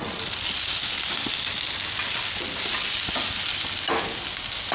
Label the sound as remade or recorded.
recorded